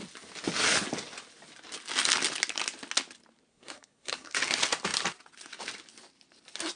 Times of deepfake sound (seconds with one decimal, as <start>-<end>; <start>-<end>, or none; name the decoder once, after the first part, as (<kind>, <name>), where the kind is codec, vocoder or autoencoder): 3.5-4.4 (codec, SNAC)